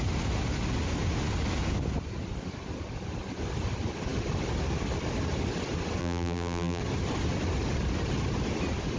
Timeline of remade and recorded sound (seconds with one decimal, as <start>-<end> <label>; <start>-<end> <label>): 0.0-6.0 recorded; 6.0-6.8 remade; 6.8-9.0 recorded